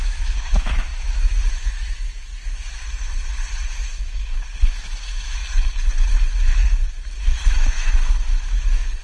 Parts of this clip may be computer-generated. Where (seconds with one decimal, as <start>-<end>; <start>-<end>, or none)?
0.0-2.3; 4.0-5.4; 7.2-9.0